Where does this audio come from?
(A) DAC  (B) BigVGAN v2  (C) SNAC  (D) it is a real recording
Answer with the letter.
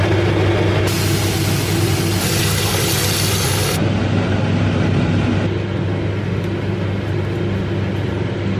D